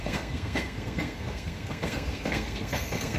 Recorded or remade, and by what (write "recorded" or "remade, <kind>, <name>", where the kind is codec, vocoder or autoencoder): remade, codec, SNAC